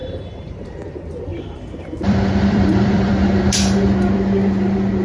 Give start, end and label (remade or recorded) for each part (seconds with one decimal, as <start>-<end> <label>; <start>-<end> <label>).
0.0-0.5 remade; 0.5-1.3 recorded; 1.3-3.1 remade; 3.1-5.0 recorded